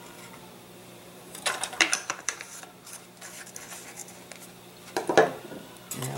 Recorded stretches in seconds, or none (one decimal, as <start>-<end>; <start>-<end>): 0.0-0.8; 2.6-6.2